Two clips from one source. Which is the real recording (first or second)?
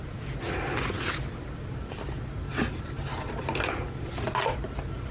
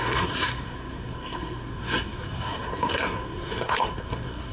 first